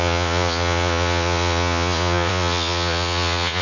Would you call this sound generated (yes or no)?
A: yes